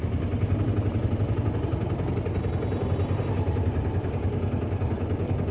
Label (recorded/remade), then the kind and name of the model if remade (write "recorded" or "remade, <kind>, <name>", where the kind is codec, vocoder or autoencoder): recorded